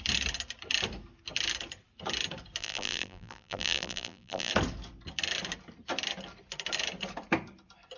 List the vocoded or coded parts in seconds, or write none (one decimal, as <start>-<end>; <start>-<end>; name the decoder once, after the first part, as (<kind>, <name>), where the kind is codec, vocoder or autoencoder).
2.6-4.5 (vocoder, BigVGAN v2)